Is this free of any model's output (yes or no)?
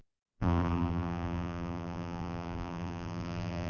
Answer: no